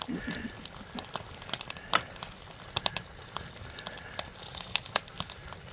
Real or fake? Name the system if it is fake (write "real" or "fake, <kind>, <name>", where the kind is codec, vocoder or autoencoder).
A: real